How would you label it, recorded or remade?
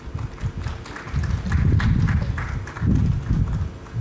recorded